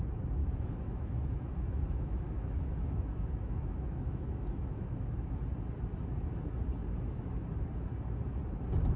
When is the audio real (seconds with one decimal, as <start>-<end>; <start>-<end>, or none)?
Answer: 0.0-0.4; 5.4-9.0